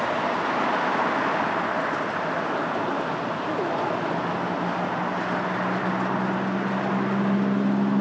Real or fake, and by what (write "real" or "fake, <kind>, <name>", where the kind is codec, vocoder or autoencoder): real